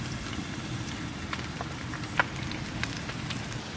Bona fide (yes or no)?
yes